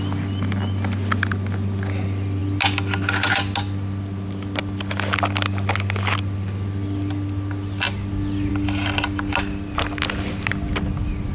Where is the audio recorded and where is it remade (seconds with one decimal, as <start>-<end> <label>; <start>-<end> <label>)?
0.0-11.3 recorded

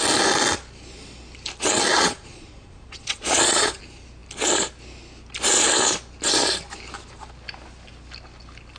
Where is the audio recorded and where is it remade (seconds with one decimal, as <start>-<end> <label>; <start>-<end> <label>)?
0.0-1.9 recorded; 1.9-3.8 remade; 3.8-8.8 recorded